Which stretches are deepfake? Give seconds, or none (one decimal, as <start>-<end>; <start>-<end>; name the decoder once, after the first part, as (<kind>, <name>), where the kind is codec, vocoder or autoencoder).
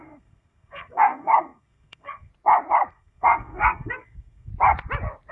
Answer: 0.0-2.3 (codec, SNAC); 2.9-4.5